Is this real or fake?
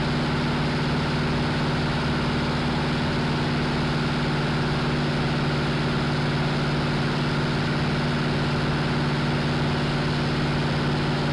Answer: real